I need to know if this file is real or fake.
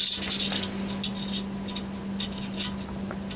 real